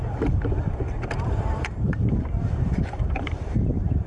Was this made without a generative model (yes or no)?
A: no